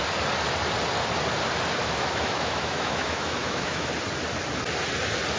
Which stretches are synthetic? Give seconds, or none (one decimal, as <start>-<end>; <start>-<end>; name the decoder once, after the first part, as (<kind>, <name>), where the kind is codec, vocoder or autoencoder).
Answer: 1.8-3.9 (autoencoder, DAC-VAE)